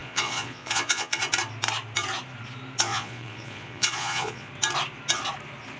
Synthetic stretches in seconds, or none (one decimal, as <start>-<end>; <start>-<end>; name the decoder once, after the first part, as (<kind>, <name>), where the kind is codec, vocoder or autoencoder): 0.0-1.2 (vocoder, Vocos); 2.9-4.5